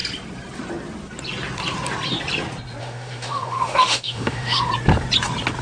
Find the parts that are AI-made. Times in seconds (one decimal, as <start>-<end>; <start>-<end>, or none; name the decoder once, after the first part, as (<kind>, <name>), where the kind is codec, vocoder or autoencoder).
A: 2.8-4.7 (autoencoder, DAC-VAE)